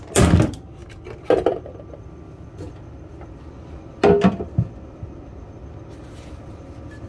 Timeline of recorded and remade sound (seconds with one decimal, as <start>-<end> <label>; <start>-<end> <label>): 0.0-7.1 recorded